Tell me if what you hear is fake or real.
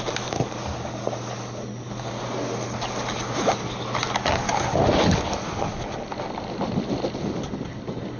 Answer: real